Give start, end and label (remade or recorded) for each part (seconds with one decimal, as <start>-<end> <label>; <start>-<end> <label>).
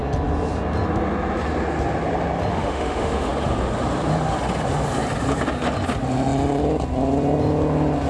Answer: 0.0-2.5 recorded; 2.5-3.3 remade; 3.3-8.1 recorded